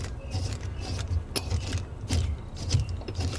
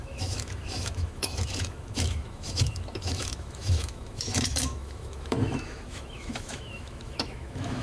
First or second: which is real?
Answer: first